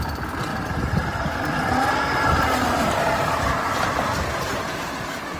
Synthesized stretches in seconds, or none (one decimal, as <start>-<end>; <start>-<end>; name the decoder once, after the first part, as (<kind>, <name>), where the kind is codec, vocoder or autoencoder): none